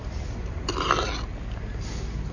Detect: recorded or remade recorded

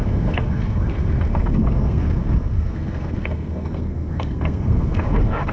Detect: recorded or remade remade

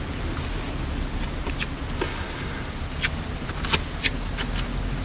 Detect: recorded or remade recorded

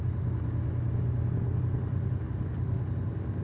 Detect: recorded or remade recorded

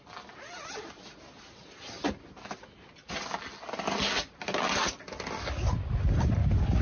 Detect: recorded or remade recorded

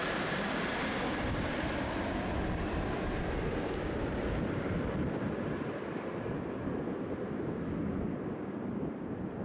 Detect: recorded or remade recorded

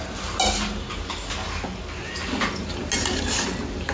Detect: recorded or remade recorded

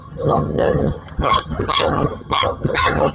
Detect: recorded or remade remade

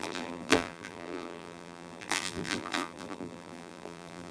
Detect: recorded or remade remade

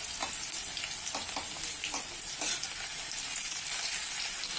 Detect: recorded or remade recorded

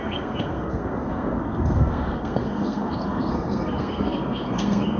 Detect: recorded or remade remade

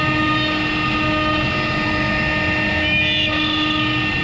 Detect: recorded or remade recorded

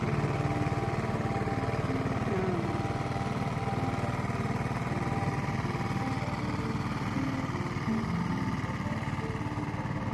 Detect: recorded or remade recorded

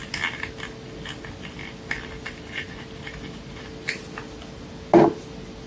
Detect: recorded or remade recorded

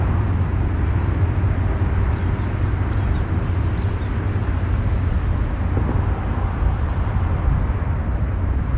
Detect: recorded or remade recorded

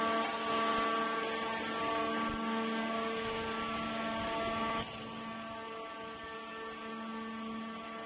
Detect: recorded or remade recorded